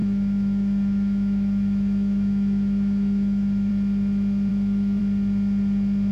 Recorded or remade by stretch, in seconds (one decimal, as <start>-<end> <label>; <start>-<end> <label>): 0.0-3.7 remade; 3.7-4.5 recorded; 4.5-5.0 remade; 5.0-6.1 recorded